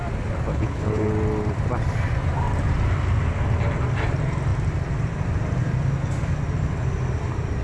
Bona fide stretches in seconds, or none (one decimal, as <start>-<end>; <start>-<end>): 0.0-0.5; 1.1-7.6